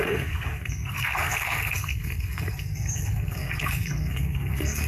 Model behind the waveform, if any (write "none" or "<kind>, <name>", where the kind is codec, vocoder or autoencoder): codec, SNAC